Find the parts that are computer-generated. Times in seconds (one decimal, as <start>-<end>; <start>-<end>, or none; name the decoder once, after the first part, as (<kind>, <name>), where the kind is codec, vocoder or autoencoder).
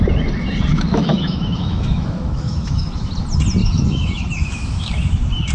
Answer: 0.7-3.1 (autoencoder, DAC-VAE); 3.6-4.9